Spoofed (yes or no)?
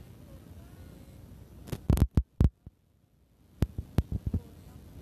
no